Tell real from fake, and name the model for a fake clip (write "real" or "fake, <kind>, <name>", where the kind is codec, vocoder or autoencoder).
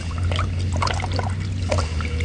real